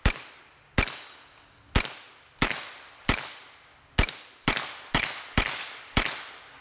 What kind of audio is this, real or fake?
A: real